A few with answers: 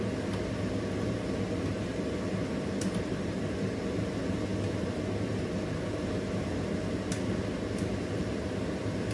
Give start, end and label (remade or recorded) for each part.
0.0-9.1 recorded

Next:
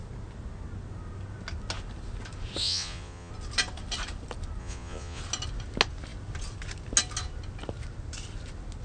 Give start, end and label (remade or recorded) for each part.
0.0-2.6 recorded; 2.6-3.3 remade; 3.3-4.6 recorded; 4.6-5.2 remade; 5.2-8.8 recorded

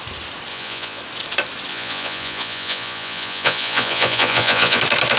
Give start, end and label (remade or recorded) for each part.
0.0-0.5 recorded; 0.5-1.0 remade; 1.0-1.7 recorded; 1.7-4.8 remade; 4.8-5.2 recorded

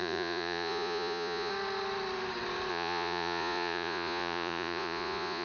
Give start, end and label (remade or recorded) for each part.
0.0-1.5 remade; 1.5-2.7 recorded; 2.7-5.4 remade

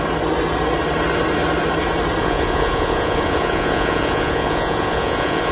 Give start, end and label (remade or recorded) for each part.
0.0-2.2 recorded; 2.2-5.5 remade

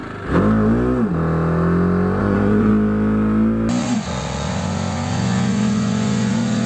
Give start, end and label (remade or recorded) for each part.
0.0-2.2 recorded; 2.2-2.7 remade; 2.7-3.8 recorded; 3.8-6.7 remade

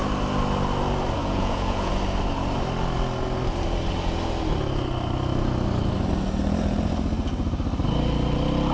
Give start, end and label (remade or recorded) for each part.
0.0-1.2 recorded; 1.2-1.9 remade; 1.9-8.7 recorded

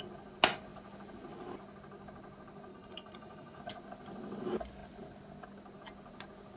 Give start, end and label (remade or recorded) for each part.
0.0-2.7 recorded; 2.7-3.6 remade; 3.6-6.6 recorded